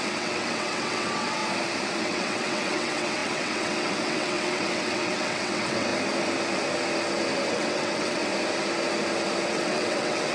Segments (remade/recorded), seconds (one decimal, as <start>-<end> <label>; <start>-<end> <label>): 0.0-1.4 remade; 1.4-2.0 recorded; 2.0-5.9 remade; 5.9-7.5 recorded; 7.5-8.3 remade; 8.3-9.5 recorded; 9.5-10.3 remade